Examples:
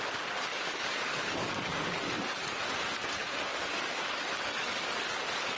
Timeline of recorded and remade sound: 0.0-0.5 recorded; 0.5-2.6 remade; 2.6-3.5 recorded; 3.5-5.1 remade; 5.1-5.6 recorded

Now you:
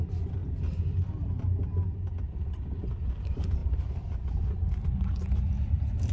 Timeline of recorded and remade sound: 0.0-6.1 recorded

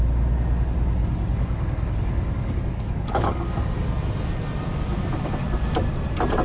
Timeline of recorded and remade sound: 0.0-1.0 recorded; 1.0-3.8 remade; 3.8-6.4 recorded

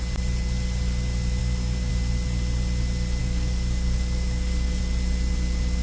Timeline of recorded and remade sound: 0.0-1.4 recorded; 1.4-1.9 remade; 1.9-3.2 recorded; 3.2-4.8 remade; 4.8-5.8 recorded

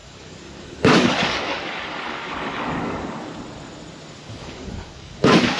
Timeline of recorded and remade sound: 0.0-3.4 remade; 3.4-4.2 recorded; 4.2-5.6 remade